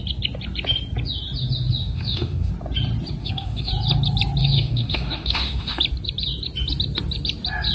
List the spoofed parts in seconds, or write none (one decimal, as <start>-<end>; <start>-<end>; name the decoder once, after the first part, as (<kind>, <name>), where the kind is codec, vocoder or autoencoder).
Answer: 1.8-2.5 (autoencoder, DAC-VAE); 3.2-3.7; 4.4-5.8